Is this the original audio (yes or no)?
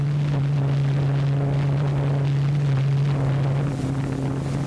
yes